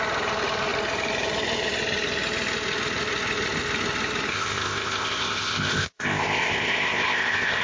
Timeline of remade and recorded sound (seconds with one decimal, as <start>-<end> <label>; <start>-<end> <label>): 0.0-4.3 recorded; 4.3-7.6 remade